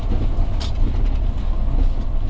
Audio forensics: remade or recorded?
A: recorded